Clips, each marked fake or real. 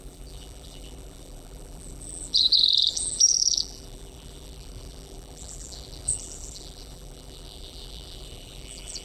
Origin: fake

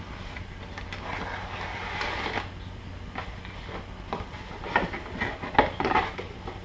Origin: real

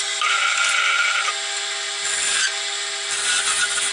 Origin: real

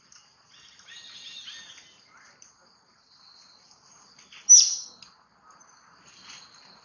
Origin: real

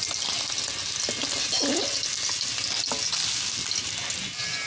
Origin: real